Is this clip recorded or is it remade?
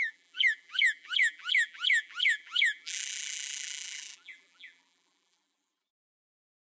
remade